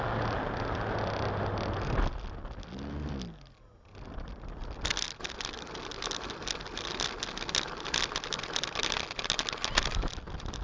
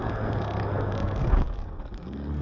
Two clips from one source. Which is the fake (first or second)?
second